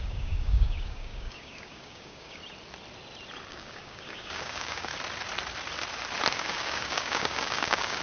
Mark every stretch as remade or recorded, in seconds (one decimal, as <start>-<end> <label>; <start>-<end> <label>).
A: 0.0-2.4 remade; 2.4-3.5 recorded; 3.5-4.9 remade; 4.9-6.3 recorded; 6.3-8.0 remade